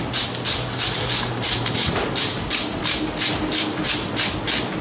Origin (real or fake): real